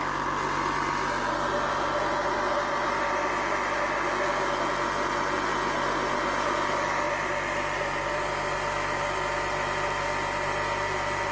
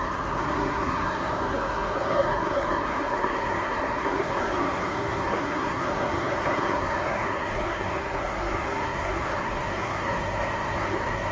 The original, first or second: first